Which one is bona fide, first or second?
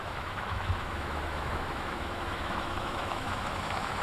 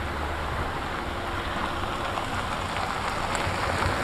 second